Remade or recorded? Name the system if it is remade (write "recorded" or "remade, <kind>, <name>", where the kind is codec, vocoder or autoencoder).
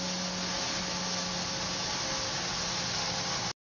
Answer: recorded